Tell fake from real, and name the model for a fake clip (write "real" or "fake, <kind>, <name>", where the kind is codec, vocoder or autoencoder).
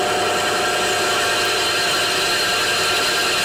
real